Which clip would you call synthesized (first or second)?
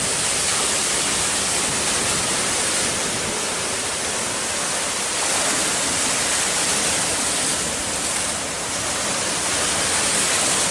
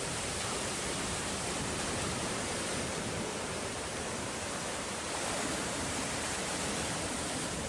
second